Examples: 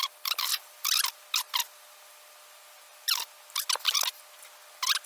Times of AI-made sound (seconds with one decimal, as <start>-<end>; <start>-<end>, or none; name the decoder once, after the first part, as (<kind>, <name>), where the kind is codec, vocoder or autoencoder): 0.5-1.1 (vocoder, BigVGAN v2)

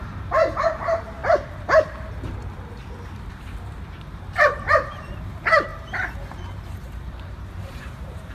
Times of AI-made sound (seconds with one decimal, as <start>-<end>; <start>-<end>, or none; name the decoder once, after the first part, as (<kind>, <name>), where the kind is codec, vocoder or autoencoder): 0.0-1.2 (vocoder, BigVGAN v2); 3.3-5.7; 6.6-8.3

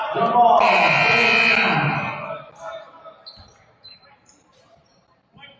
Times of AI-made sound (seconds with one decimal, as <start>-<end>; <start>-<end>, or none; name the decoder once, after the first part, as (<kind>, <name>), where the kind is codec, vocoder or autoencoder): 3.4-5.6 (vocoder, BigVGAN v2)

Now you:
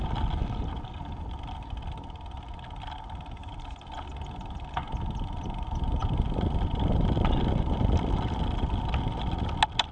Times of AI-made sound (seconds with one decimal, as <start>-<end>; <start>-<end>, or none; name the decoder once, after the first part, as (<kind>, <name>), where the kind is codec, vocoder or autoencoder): none

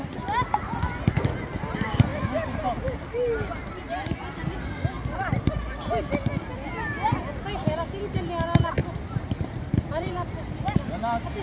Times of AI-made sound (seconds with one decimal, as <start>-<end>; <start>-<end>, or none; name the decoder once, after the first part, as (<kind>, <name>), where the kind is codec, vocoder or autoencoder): 2.1-4.6 (vocoder, BigVGAN v2); 8.8-10.7

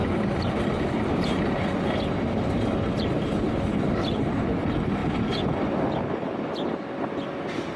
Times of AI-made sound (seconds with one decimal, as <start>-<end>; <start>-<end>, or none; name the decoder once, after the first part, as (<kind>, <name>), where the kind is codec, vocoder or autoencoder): 0.0-4.3 (vocoder, BigVGAN v2)

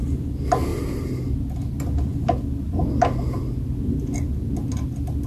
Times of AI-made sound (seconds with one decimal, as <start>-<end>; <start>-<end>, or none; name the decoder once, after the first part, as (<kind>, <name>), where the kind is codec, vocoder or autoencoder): none

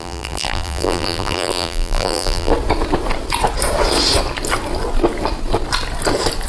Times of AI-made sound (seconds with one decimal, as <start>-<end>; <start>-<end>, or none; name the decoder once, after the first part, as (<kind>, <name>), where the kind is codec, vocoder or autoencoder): 0.0-2.5 (vocoder, BigVGAN v2)